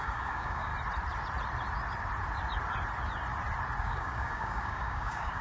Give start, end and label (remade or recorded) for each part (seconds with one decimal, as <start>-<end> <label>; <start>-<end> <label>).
0.0-0.7 remade; 0.7-3.8 recorded; 3.8-5.4 remade